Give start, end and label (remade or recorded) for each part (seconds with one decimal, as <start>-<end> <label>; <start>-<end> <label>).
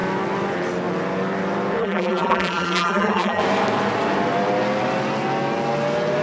0.0-1.8 recorded; 1.8-3.4 remade; 3.4-6.2 recorded